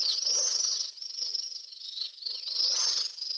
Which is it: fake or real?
real